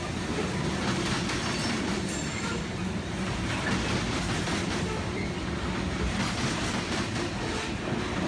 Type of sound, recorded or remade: recorded